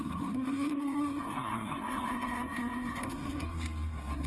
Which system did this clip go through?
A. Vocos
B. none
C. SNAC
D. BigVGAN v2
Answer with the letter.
C